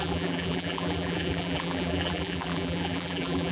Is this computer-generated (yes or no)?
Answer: yes